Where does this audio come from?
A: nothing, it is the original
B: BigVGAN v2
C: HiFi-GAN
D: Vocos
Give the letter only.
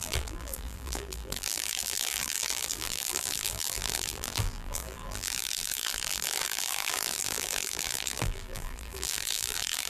B